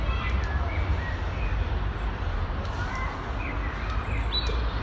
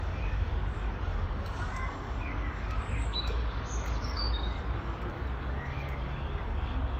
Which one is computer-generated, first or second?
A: second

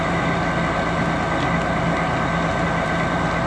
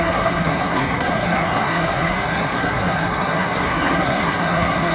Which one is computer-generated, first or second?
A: second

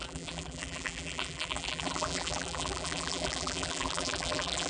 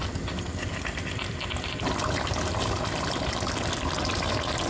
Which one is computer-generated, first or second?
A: first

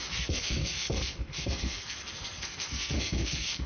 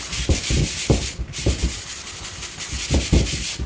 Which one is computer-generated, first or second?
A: first